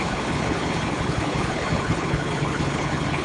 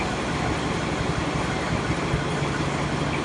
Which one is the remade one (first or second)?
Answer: first